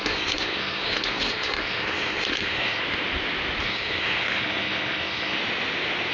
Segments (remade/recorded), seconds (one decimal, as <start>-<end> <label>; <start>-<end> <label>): 0.0-2.8 remade; 2.8-3.6 recorded; 3.6-5.4 remade; 5.4-6.1 recorded